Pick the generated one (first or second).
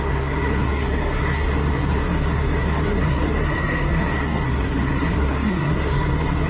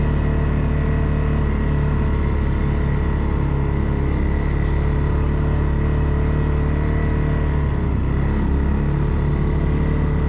first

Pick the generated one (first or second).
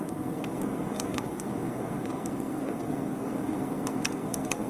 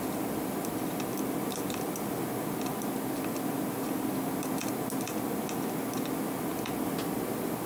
first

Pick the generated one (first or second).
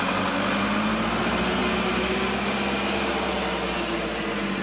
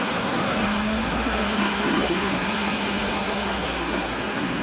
second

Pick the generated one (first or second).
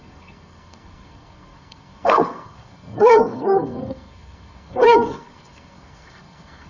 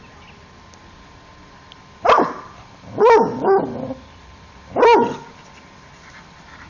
first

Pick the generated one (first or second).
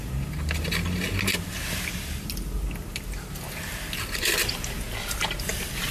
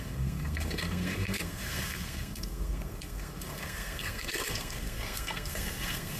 second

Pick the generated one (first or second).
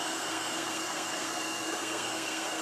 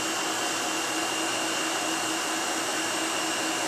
first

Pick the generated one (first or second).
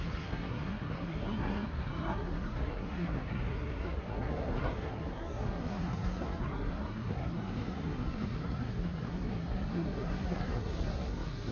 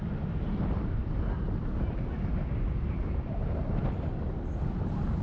first